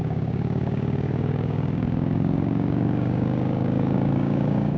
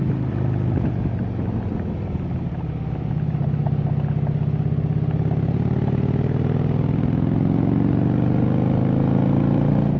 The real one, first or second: second